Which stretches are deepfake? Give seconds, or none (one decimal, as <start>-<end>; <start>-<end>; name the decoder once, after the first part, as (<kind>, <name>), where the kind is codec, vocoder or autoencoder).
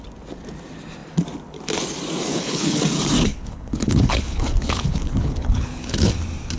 2.3-2.8 (codec, HILCodec); 3.3-6.1